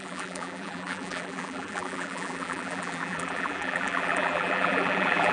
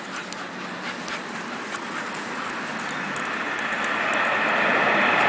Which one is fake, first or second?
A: first